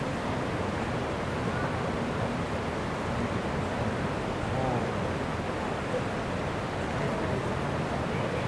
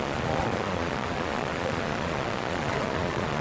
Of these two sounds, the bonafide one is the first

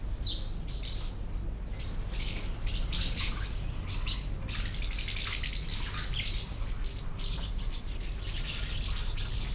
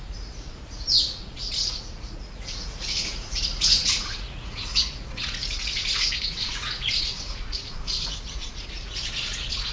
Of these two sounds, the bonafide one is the first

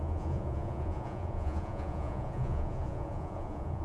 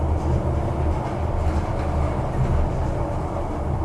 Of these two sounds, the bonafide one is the second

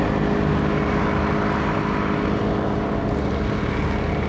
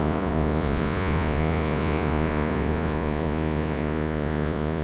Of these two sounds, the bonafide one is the first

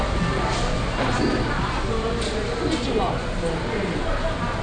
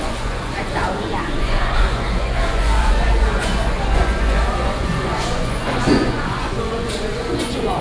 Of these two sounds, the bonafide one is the first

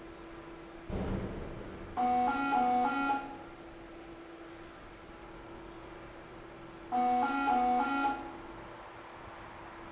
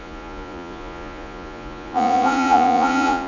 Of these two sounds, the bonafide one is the first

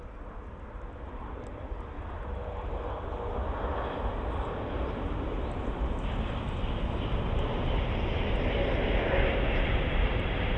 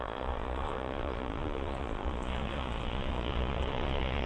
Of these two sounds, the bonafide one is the first